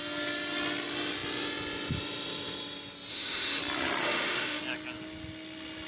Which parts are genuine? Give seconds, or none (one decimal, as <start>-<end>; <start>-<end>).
0.0-3.1; 3.6-4.0; 4.6-5.9